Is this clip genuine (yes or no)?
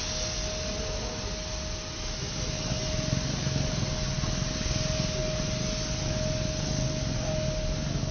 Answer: yes